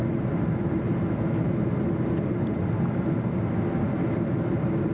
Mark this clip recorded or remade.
recorded